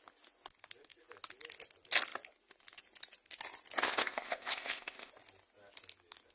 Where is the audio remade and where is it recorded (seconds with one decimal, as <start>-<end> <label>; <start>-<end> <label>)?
0.0-3.8 recorded; 3.8-5.1 remade; 5.1-6.3 recorded